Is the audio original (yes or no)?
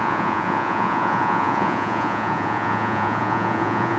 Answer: no